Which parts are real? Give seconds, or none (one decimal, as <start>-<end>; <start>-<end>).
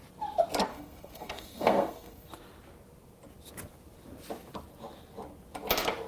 0.0-0.7; 2.3-6.1